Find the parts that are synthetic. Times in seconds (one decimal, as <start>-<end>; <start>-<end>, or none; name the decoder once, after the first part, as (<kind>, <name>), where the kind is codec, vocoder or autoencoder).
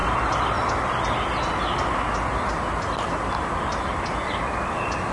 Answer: none